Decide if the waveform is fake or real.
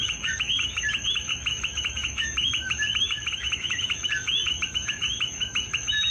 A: fake